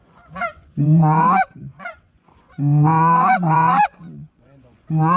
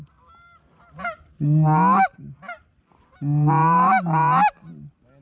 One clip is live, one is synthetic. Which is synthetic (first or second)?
first